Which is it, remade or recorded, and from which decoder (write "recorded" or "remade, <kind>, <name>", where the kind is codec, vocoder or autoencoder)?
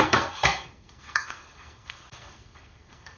remade, codec, SNAC